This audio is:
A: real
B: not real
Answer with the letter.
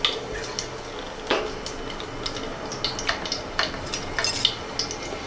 A